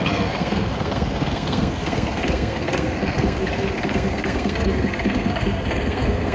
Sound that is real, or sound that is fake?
fake